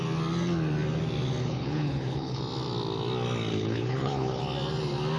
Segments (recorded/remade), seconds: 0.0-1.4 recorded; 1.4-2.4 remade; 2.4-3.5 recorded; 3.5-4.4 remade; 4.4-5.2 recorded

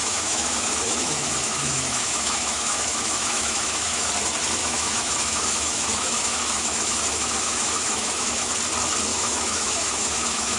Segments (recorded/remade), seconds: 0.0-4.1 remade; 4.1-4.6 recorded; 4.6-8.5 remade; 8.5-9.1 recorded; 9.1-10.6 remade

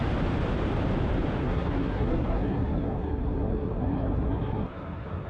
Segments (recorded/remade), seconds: 0.0-1.4 recorded; 1.4-5.3 remade

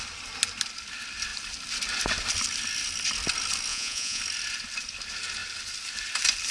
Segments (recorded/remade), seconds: 0.0-3.7 recorded; 3.7-4.2 remade; 4.2-6.5 recorded

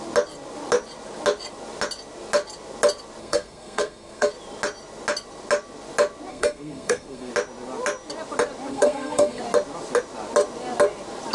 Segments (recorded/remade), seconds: 0.0-3.2 recorded; 3.2-4.3 remade; 4.3-6.3 recorded; 6.3-7.3 remade; 7.3-8.7 recorded; 8.7-9.4 remade; 9.4-11.3 recorded